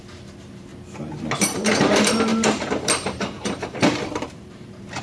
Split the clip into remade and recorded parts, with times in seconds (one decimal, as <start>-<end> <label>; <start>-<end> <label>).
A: 0.0-0.7 remade; 0.7-1.4 recorded; 1.4-5.0 remade